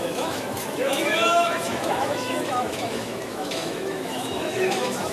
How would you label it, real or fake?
fake